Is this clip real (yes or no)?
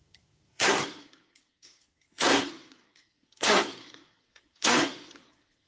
no